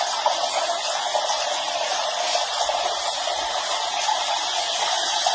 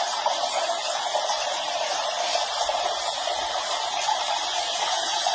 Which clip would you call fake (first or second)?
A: second